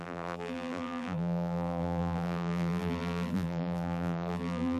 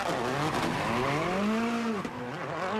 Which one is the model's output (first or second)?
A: first